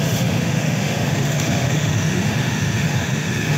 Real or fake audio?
fake